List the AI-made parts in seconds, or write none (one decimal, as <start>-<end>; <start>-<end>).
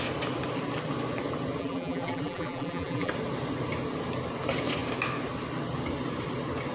1.6-3.1